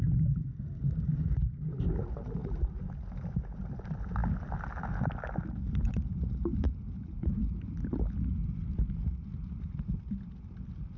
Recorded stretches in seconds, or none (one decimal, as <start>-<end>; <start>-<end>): 0.0-11.0